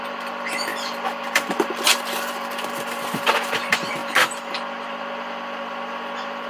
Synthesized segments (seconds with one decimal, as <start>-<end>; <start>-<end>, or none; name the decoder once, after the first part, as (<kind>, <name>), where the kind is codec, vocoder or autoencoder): 0.0-4.0 (vocoder, BigVGAN v2)